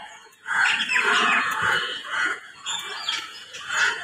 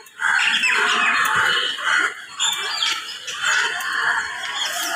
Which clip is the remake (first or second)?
first